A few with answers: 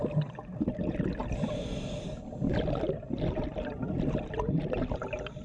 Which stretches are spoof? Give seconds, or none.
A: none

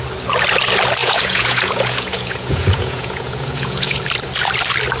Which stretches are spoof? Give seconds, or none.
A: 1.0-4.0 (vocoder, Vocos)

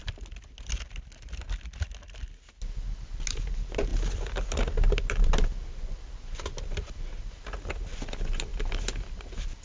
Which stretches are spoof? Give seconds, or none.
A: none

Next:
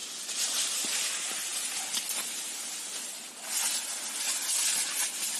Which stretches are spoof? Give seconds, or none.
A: none

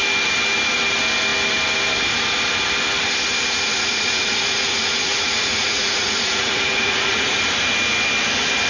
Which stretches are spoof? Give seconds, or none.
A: 3.7-7.4 (vocoder, Vocos)

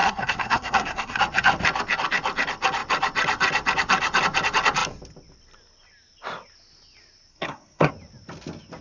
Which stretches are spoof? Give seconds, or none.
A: 0.0-1.2 (codec, SNAC); 7.3-7.9

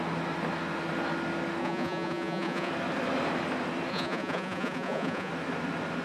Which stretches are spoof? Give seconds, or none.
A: 1.6-2.7 (vocoder, Vocos); 3.9-5.3